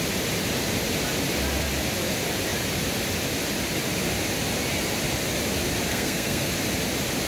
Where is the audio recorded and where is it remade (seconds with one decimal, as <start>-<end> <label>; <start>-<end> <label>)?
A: 0.0-5.9 recorded; 5.9-6.5 remade; 6.5-7.3 recorded